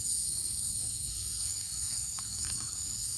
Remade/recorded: remade